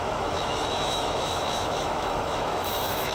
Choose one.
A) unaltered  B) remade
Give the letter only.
B